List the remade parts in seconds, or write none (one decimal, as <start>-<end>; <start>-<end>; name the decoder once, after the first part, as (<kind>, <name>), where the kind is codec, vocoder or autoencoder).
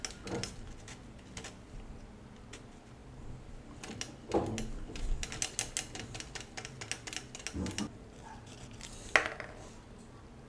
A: none